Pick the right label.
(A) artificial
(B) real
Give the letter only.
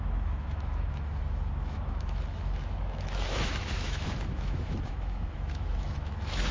A